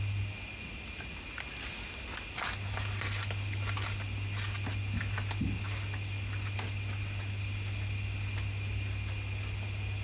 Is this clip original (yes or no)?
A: yes